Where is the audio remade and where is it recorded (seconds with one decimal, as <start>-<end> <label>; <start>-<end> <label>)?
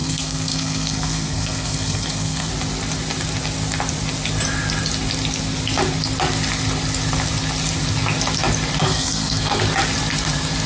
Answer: 0.0-2.5 remade; 2.5-8.8 recorded; 8.8-9.6 remade; 9.6-10.7 recorded